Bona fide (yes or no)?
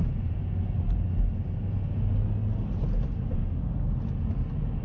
yes